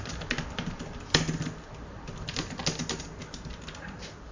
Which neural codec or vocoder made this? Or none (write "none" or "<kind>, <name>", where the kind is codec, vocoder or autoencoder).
none